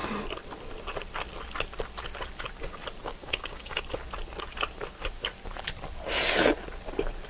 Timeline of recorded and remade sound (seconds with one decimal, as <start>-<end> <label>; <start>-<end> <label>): 0.0-3.2 recorded; 3.2-3.8 remade; 3.8-7.3 recorded